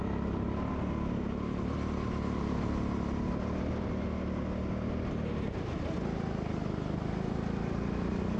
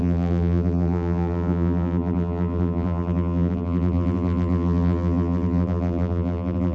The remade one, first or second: second